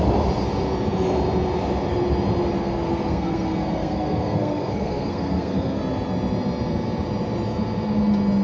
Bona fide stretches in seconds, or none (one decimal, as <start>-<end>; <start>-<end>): 0.0-2.6; 5.8-8.4

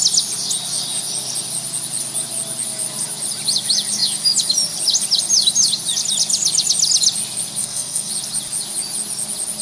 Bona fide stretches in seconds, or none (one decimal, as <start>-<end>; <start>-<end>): 0.0-7.6; 8.1-9.6

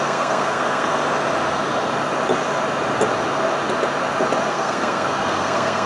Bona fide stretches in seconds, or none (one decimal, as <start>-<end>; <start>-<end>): 1.0-4.5

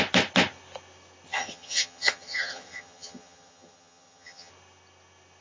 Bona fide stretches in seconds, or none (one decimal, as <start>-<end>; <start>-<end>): 0.0-1.3; 4.5-5.4

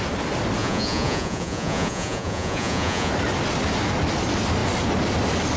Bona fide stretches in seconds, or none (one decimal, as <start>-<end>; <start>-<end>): 0.0-0.6; 3.1-5.6

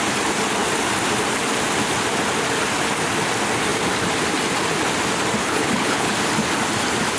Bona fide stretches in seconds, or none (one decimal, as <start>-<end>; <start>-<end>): 0.0-5.4; 6.1-7.2

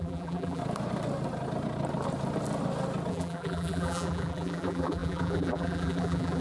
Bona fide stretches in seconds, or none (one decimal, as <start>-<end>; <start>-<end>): 0.6-3.1

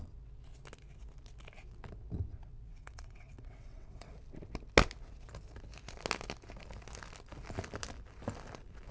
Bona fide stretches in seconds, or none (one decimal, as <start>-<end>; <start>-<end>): 0.0-2.7; 4.1-8.9